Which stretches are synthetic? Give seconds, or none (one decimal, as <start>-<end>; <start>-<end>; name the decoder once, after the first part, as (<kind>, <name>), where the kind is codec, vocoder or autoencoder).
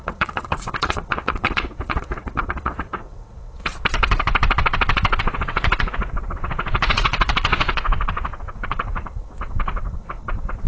0.0-3.7 (vocoder, WaveNeXt); 5.2-10.7